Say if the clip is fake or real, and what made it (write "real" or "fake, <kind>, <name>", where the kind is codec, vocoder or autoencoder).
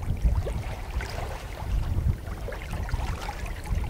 fake, vocoder, BigVGAN v2